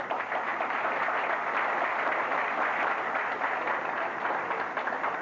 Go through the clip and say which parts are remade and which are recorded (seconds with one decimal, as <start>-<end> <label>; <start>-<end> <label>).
0.0-5.2 recorded

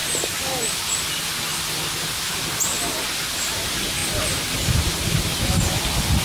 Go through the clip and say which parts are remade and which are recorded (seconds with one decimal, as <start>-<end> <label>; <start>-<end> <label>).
0.0-0.6 remade; 0.6-6.2 recorded